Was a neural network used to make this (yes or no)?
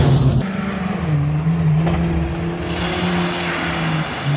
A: no